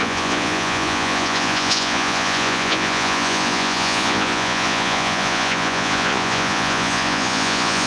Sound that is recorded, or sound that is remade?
remade